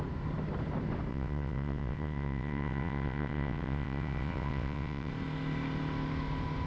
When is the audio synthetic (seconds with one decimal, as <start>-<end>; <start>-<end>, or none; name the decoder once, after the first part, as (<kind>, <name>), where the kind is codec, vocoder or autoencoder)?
1.1-5.1 (vocoder, WaveNeXt)